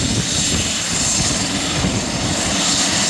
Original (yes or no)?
yes